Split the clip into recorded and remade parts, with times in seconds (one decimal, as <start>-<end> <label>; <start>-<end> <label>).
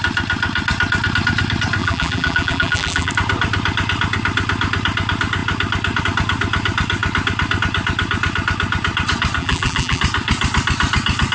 0.0-1.8 recorded; 1.8-3.1 remade; 3.1-9.4 recorded; 9.4-10.0 remade; 10.0-11.3 recorded